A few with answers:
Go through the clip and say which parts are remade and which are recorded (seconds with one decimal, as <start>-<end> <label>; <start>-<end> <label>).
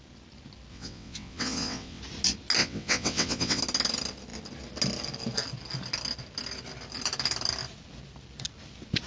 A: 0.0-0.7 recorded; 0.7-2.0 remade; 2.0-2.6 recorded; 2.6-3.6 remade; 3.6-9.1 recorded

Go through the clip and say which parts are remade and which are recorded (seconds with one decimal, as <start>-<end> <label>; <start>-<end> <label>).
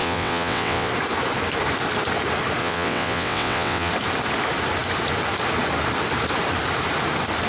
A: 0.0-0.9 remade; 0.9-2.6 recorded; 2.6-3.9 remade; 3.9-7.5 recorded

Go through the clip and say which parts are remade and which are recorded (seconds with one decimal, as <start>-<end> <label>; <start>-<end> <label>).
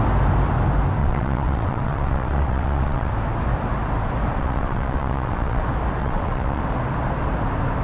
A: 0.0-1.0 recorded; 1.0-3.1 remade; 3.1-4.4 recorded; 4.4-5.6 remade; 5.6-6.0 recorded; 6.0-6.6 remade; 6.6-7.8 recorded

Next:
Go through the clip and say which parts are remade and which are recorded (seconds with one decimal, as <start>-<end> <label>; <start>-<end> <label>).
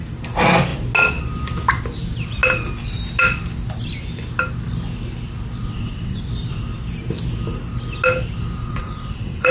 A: 0.0-5.6 recorded; 5.6-6.2 remade; 6.2-8.6 recorded; 8.6-9.5 remade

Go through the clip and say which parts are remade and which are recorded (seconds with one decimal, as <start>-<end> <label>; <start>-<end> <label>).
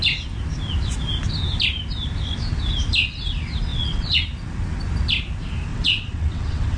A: 0.0-3.7 recorded; 3.7-4.2 remade; 4.2-5.7 recorded; 5.7-6.8 remade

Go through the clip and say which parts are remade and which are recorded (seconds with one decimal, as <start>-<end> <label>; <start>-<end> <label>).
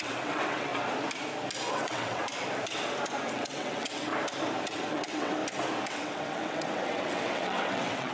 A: 0.0-0.7 remade; 0.7-1.7 recorded; 1.7-2.2 remade; 2.2-3.3 recorded; 3.3-4.1 remade; 4.1-4.9 recorded; 4.9-5.4 remade; 5.4-5.9 recorded; 5.9-8.1 remade